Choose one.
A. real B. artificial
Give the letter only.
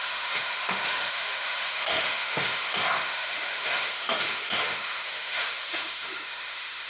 B